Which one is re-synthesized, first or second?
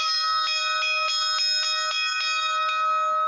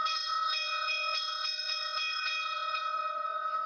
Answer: second